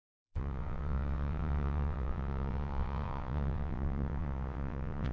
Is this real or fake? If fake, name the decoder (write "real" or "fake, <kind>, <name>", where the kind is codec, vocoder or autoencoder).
fake, vocoder, WaveNeXt